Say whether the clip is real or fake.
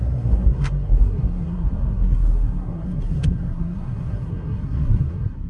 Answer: fake